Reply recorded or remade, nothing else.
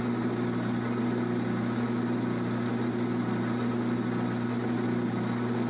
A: recorded